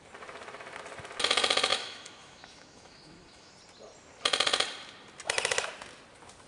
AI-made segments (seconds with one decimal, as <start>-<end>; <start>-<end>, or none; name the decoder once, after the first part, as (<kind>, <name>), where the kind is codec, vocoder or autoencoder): 1.7-3.5 (autoencoder, DAC-VAE)